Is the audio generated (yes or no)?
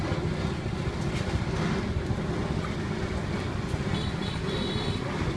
no